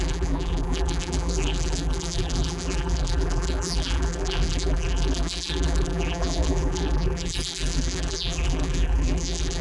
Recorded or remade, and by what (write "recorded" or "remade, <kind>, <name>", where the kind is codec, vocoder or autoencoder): remade, vocoder, BigVGAN v2